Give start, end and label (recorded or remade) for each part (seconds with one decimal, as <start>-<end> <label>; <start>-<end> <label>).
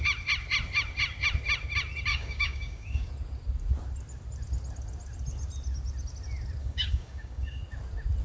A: 0.0-2.1 recorded; 2.1-3.1 remade; 3.1-6.6 recorded; 6.6-7.6 remade; 7.6-8.2 recorded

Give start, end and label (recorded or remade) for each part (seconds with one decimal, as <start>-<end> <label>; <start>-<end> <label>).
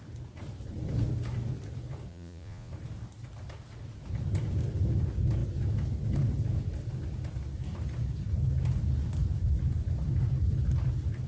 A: 0.0-2.1 recorded; 2.1-2.7 remade; 2.7-11.3 recorded